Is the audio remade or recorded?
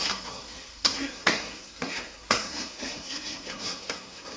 remade